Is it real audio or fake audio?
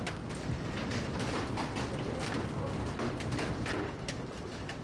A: real